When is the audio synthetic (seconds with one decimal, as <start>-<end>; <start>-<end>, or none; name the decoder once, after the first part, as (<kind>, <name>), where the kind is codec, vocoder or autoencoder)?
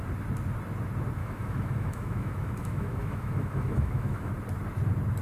1.2-4.3 (autoencoder, DAC-VAE)